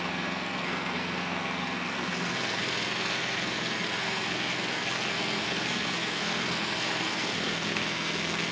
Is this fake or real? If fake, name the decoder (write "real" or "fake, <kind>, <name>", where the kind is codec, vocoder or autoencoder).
fake, codec, SNAC